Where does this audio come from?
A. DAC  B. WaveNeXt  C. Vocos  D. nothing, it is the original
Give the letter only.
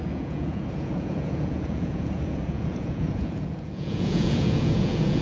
C